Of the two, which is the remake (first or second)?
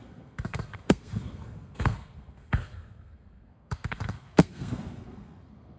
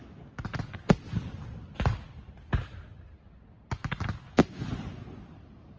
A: first